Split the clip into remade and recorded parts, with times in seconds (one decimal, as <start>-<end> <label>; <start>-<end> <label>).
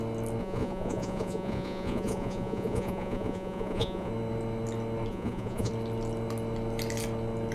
0.0-0.4 recorded; 0.4-4.1 remade; 4.1-5.1 recorded; 5.1-5.7 remade; 5.7-7.5 recorded